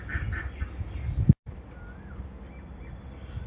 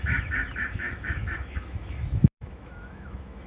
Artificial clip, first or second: second